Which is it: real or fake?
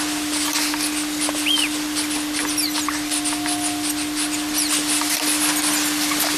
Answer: real